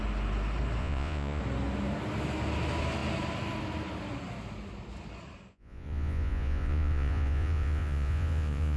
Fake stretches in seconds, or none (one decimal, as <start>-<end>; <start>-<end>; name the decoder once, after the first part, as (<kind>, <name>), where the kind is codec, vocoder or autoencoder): 0.8-1.4 (vocoder, Vocos); 5.5-8.8